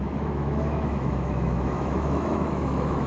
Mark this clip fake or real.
fake